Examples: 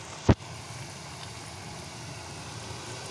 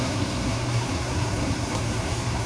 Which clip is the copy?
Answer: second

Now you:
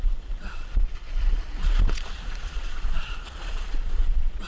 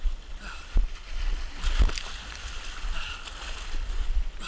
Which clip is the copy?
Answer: first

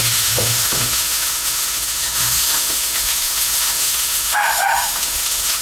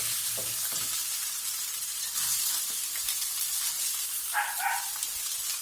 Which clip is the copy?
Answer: first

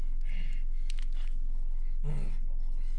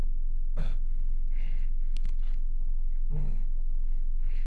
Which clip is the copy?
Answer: second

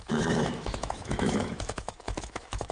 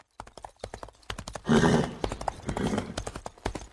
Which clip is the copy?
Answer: first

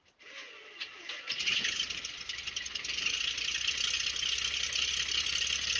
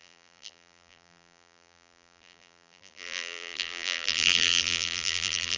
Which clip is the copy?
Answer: second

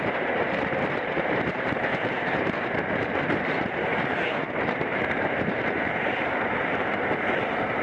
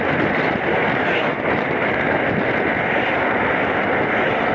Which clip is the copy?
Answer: first